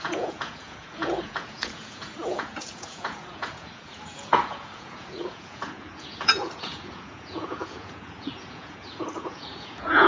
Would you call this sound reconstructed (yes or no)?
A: yes